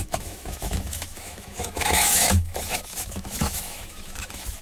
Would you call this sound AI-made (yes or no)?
yes